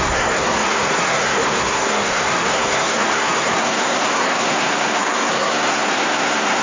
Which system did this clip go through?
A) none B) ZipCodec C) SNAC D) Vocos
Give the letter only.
C